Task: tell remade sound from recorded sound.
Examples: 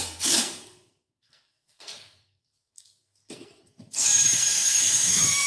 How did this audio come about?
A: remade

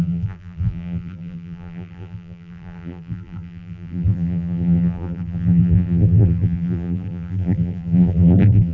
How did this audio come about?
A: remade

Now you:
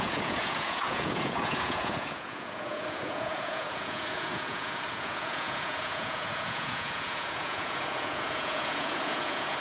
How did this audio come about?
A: remade